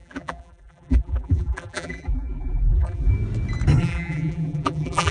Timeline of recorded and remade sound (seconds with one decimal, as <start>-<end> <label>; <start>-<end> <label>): 0.0-3.1 remade; 3.1-3.8 recorded; 3.8-5.1 remade